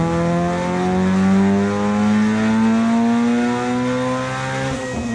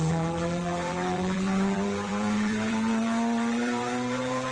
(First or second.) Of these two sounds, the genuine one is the first